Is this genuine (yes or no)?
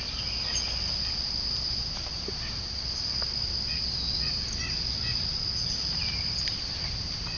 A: yes